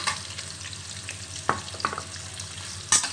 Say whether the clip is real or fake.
real